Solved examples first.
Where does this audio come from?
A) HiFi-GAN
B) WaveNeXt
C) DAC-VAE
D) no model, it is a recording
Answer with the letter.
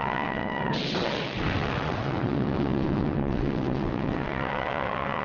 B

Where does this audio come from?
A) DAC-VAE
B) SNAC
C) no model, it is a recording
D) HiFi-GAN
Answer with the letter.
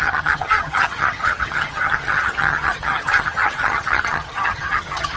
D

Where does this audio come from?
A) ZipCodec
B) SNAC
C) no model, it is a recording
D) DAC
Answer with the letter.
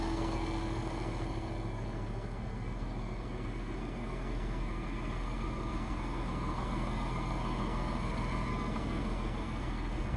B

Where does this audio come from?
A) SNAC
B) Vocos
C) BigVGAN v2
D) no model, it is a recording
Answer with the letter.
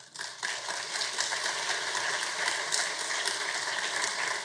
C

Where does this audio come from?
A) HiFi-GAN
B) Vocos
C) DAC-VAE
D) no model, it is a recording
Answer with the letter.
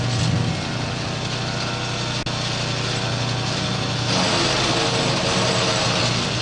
D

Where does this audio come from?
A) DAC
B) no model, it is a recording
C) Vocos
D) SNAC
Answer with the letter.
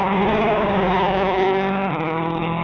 A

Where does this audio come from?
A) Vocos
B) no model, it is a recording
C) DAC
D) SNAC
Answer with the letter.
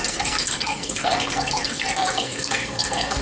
D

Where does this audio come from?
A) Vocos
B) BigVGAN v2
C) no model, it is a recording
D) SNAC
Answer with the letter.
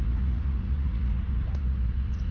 A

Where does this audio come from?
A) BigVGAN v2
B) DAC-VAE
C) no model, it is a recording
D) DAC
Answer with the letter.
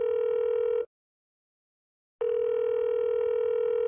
C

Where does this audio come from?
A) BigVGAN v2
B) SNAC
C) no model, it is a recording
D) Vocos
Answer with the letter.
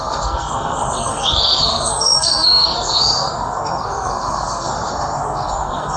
B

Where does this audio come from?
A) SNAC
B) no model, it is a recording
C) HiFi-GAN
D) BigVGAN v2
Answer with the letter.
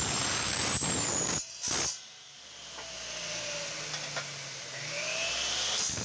B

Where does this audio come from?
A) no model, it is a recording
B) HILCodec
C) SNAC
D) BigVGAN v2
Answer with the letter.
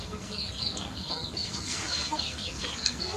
C